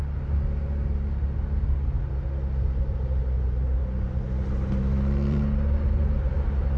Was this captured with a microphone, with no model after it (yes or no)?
yes